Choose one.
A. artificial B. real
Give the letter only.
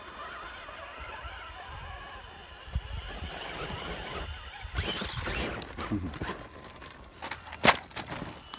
B